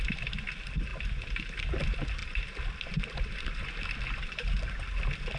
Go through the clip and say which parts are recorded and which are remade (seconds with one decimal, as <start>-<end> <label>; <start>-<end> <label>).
0.0-5.4 recorded